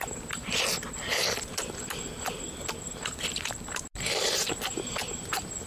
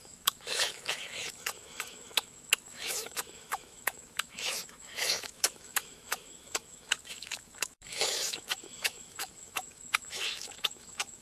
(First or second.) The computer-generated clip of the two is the second